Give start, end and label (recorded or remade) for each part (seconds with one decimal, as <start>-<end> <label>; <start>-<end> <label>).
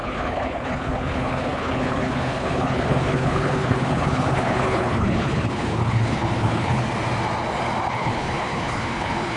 0.0-6.8 remade; 6.8-7.9 recorded; 7.9-9.4 remade